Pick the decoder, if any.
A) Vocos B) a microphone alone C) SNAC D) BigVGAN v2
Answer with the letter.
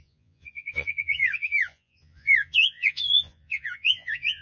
A